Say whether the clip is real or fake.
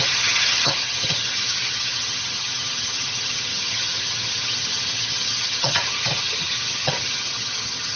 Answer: fake